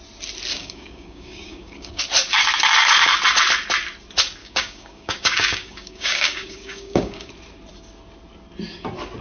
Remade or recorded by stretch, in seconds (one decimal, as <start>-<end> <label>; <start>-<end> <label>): 0.0-0.5 recorded; 0.5-2.0 remade; 2.0-4.4 recorded; 4.4-7.3 remade; 7.3-9.2 recorded